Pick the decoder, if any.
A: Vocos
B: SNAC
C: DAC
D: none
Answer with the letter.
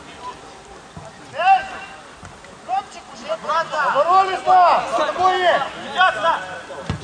D